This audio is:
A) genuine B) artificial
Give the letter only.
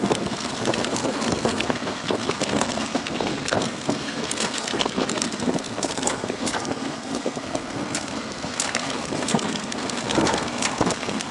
B